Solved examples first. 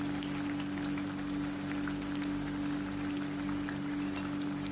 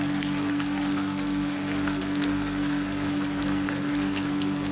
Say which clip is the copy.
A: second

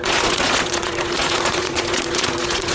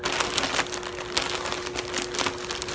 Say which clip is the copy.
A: first